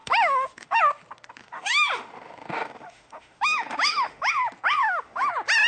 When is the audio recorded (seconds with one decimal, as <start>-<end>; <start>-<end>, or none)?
0.8-1.4; 4.3-4.8; 5.3-5.7